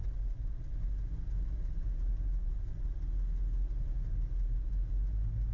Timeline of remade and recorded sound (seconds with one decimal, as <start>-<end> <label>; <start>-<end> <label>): 0.0-5.5 recorded